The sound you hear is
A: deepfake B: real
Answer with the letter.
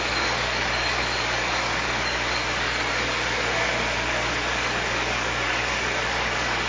A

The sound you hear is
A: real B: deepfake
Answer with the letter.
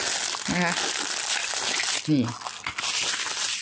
A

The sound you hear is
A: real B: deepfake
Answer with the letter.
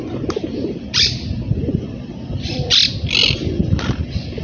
A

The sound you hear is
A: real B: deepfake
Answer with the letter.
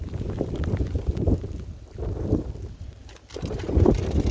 A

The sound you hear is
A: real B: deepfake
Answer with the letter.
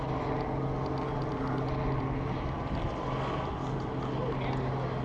A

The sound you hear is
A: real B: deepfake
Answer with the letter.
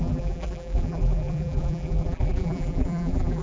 B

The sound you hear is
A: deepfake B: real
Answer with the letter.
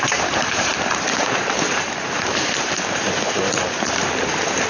A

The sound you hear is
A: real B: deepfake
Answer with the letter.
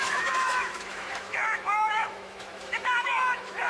B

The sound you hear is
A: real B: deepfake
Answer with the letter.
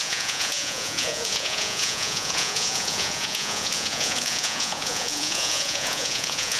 B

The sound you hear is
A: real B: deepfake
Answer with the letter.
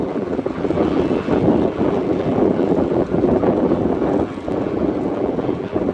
B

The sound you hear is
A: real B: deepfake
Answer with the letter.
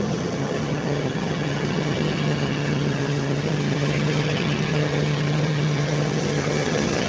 B